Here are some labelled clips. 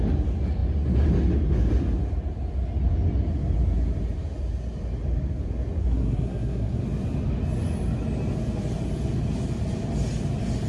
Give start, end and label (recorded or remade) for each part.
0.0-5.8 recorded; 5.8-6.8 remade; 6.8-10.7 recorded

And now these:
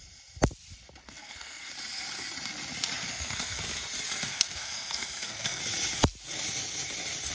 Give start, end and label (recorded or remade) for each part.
0.0-1.0 recorded; 1.0-1.7 remade; 1.7-3.1 recorded; 3.1-3.6 remade; 3.6-4.3 recorded; 4.3-5.6 remade; 5.6-7.3 recorded

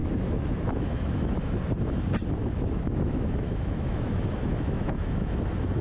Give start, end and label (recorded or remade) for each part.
0.0-1.6 remade; 1.6-2.4 recorded; 2.4-5.3 remade; 5.3-5.8 recorded

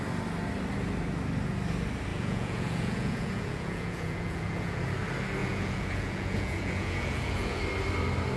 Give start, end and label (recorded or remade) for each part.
0.0-2.1 recorded; 2.1-4.8 remade; 4.8-5.4 recorded; 5.4-7.6 remade; 7.6-8.4 recorded

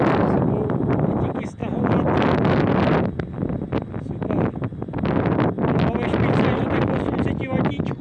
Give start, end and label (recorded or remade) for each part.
0.0-8.0 recorded

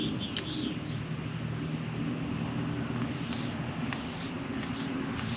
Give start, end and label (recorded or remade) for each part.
0.0-5.4 recorded

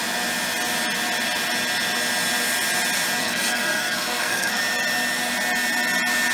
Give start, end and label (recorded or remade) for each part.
0.0-3.2 recorded; 3.2-4.6 remade; 4.6-6.3 recorded

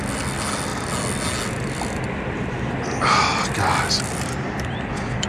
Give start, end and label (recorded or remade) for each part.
0.0-5.3 recorded